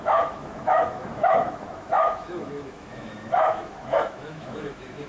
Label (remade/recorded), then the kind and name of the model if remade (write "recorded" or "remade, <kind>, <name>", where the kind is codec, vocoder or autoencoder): remade, autoencoder, DAC-VAE